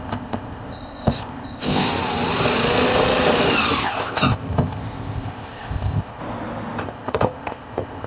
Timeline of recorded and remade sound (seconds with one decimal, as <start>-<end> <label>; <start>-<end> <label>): 0.0-1.9 remade; 1.9-3.8 recorded; 3.8-6.2 remade; 6.2-6.8 recorded; 6.8-8.1 remade